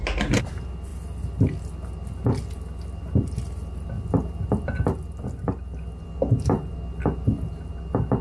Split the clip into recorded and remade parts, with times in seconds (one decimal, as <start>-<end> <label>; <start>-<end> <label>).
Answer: 0.0-8.2 recorded